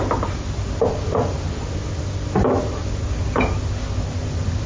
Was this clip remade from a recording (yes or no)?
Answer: no